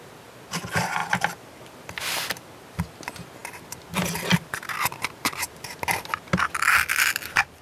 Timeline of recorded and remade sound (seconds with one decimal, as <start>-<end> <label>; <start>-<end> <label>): 0.0-7.6 recorded